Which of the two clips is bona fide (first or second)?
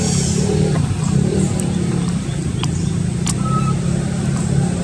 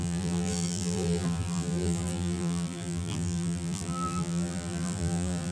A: first